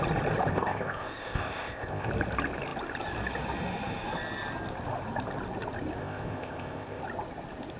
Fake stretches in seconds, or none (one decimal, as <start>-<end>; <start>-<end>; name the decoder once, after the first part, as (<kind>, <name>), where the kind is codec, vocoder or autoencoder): 0.5-2.1 (codec, ZipCodec); 6.0-7.0